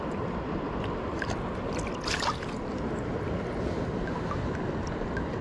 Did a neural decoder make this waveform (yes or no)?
no